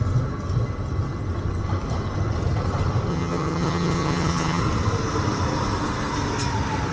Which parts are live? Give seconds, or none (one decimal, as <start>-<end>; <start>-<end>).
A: 0.0-3.1; 4.6-6.9